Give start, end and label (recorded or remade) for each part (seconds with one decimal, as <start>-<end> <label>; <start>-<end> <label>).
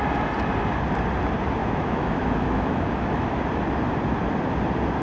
0.0-1.6 recorded; 1.6-3.4 remade; 3.4-5.0 recorded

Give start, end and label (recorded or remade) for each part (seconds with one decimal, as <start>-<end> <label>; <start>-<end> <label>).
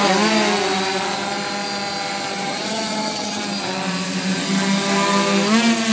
0.0-2.3 recorded; 2.3-3.4 remade; 3.4-5.9 recorded